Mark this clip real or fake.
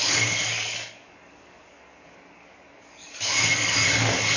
fake